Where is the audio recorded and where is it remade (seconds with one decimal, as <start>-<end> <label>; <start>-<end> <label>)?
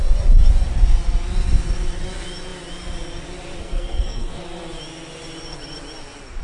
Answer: 0.0-3.6 recorded; 3.6-4.4 remade; 4.4-6.4 recorded